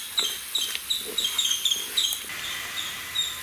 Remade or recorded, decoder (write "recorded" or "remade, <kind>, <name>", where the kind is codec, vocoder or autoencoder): recorded